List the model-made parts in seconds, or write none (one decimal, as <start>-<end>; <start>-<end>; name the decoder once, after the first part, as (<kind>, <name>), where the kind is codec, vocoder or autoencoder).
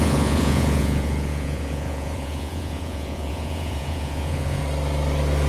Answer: 0.0-4.6 (vocoder, Vocos)